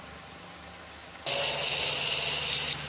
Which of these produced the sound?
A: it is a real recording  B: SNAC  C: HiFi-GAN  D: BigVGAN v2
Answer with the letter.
A